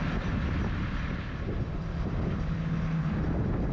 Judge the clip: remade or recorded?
recorded